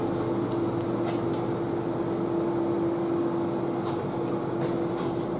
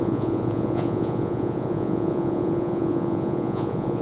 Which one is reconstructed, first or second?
second